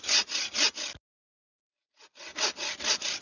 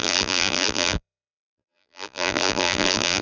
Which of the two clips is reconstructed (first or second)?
second